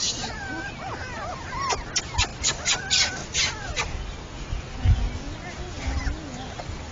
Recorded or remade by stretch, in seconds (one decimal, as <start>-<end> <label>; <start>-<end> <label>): 0.0-6.9 recorded